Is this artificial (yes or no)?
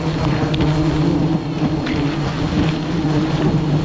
no